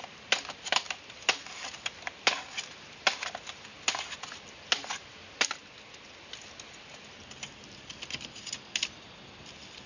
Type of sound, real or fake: real